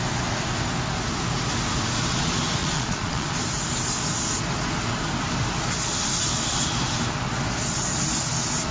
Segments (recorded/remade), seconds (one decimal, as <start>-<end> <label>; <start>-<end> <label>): 0.0-2.6 recorded; 2.6-3.3 remade; 3.3-8.7 recorded